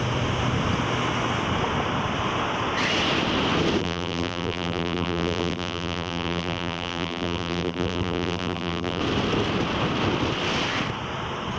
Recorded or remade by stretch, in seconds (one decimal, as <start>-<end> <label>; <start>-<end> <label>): 0.0-3.8 recorded; 3.8-9.0 remade; 9.0-11.6 recorded